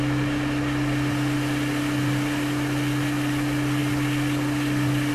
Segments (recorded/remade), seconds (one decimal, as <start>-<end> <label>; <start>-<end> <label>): 0.0-5.1 recorded